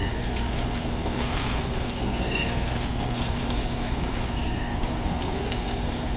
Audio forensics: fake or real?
fake